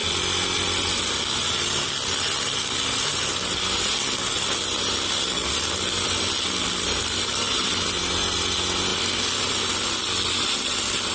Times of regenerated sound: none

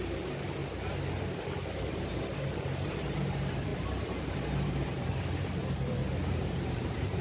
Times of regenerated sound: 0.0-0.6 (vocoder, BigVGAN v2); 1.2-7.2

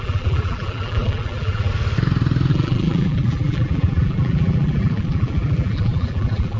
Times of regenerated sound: 0.0-1.7 (vocoder, BigVGAN v2); 2.5-6.6